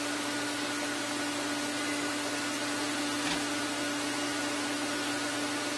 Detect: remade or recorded recorded